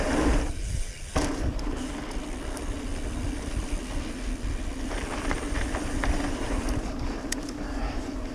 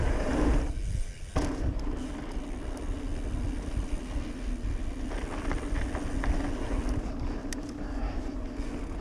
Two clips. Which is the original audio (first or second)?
second